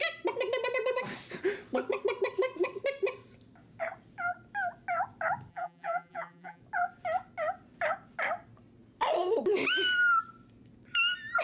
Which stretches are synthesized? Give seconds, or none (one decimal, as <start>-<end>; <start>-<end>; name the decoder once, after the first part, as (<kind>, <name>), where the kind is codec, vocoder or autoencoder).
5.5-6.6 (vocoder, BigVGAN v2)